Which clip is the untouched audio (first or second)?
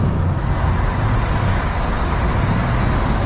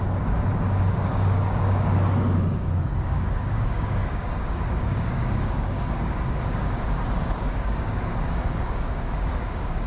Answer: first